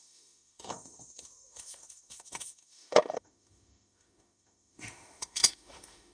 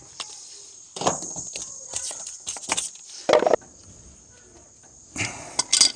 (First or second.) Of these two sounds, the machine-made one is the first